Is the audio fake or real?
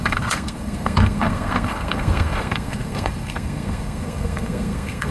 fake